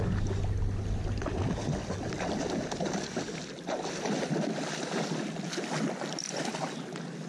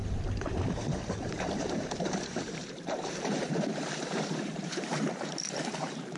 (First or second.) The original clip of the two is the first